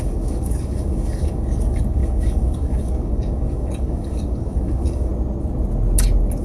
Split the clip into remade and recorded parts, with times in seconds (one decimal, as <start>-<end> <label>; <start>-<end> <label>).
0.0-5.1 remade; 5.1-6.4 recorded